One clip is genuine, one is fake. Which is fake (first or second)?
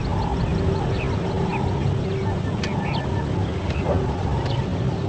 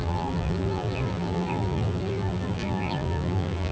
second